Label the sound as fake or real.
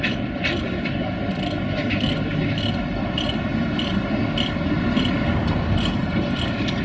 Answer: real